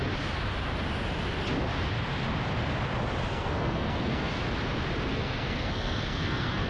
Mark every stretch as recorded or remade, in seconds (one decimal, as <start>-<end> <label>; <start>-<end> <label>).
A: 0.0-3.3 recorded; 3.3-4.3 remade; 4.3-5.1 recorded; 5.1-6.7 remade